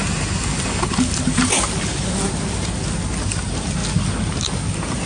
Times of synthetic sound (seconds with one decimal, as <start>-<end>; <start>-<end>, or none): none